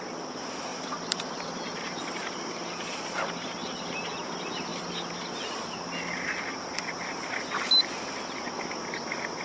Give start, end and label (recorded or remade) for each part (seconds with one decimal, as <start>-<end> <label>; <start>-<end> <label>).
0.0-0.7 recorded; 0.7-4.1 remade; 4.1-9.4 recorded